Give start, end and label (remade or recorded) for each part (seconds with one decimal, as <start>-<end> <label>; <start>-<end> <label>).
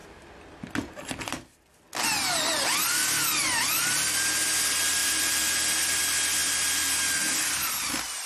0.0-5.0 recorded; 5.0-6.0 remade; 6.0-8.3 recorded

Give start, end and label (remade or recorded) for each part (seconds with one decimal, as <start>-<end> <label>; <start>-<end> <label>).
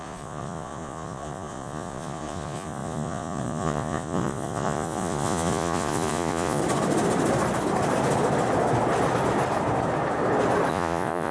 0.0-6.6 remade; 6.6-10.7 recorded; 10.7-11.3 remade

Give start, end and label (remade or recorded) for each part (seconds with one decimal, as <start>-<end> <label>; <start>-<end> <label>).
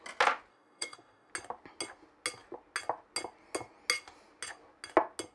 0.0-0.5 recorded; 0.5-1.3 remade; 1.3-5.3 recorded